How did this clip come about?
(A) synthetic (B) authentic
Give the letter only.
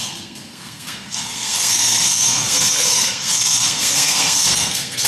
A